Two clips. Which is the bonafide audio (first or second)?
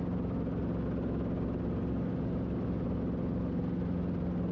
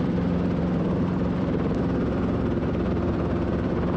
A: first